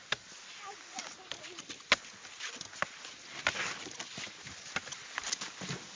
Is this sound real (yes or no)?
yes